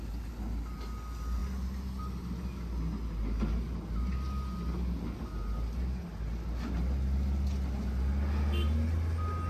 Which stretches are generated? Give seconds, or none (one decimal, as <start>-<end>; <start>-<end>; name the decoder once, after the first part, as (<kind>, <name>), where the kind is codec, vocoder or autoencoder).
none